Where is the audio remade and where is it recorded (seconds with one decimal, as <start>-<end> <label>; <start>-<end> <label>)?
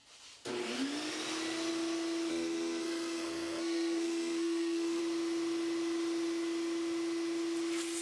0.0-2.3 recorded; 2.3-5.0 remade; 5.0-8.0 recorded